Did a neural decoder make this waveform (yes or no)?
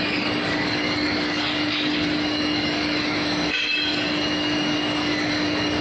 yes